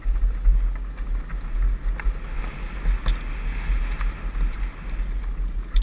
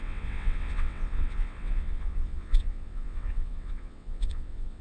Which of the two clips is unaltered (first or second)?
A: first